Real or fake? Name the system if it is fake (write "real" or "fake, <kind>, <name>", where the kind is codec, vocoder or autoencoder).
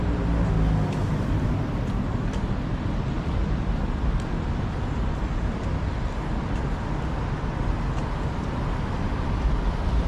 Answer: real